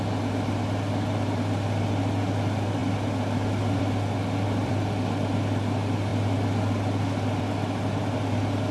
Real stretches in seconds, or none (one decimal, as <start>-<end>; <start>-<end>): 6.1-7.4